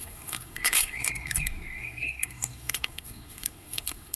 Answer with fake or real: fake